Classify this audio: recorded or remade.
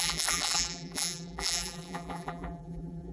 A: remade